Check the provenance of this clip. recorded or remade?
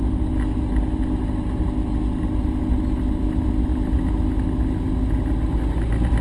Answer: recorded